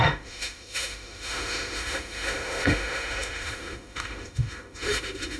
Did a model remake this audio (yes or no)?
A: yes